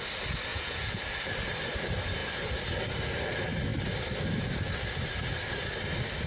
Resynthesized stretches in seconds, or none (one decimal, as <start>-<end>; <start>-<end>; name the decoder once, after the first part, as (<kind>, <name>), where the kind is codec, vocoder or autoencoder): 0.5-1.0 (vocoder, Vocos)